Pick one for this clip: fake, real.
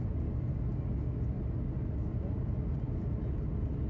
real